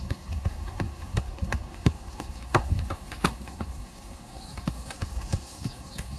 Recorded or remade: remade